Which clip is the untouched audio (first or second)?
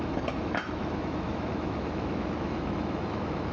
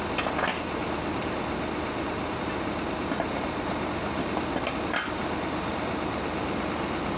second